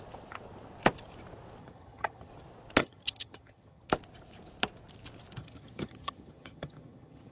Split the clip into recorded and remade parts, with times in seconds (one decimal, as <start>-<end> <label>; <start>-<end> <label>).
0.0-1.6 recorded; 1.6-2.3 remade; 2.3-2.8 recorded; 2.8-3.9 remade; 3.9-5.4 recorded; 5.4-7.3 remade